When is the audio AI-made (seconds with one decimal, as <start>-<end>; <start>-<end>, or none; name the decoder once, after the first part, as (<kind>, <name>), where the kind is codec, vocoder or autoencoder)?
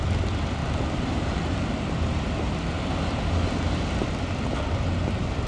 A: 0.6-1.9 (vocoder, BigVGAN v2)